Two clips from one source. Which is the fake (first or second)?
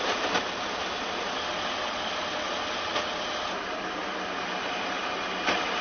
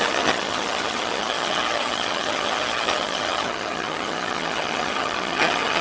second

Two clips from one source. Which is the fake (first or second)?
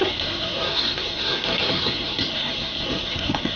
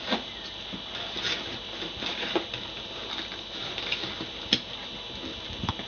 first